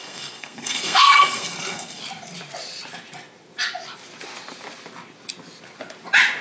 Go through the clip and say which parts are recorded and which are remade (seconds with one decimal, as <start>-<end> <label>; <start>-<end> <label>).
0.0-2.0 remade; 2.0-6.4 recorded